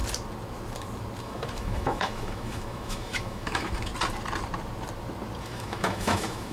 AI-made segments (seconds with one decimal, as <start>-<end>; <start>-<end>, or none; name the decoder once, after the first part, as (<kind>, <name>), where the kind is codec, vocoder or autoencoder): 1.2-3.9 (autoencoder, DAC-VAE); 5.4-6.5